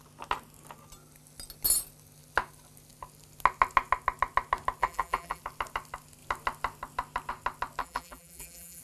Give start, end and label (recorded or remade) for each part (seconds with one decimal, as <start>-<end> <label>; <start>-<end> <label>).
0.0-4.8 recorded; 4.8-5.4 remade; 5.4-7.8 recorded; 7.8-8.8 remade